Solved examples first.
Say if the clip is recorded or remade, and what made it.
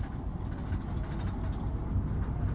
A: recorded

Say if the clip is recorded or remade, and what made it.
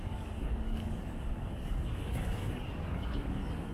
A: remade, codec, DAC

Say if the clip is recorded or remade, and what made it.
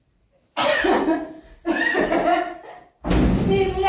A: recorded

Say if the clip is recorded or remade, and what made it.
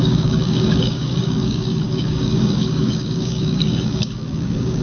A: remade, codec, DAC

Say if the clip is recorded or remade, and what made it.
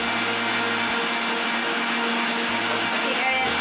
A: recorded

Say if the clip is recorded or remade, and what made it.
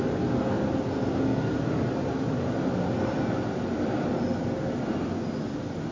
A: recorded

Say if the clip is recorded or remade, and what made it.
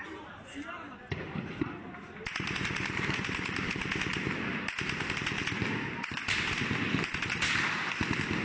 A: recorded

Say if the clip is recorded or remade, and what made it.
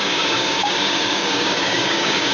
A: remade, codec, DAC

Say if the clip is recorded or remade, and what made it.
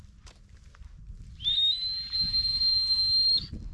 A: recorded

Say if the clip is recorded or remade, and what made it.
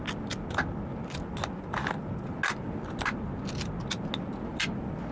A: recorded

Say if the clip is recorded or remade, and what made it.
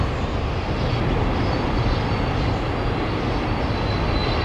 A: recorded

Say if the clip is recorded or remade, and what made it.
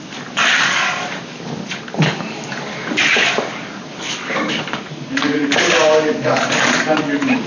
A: remade, codec, DAC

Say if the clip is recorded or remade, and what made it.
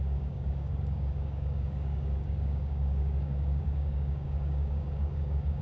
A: remade, codec, DAC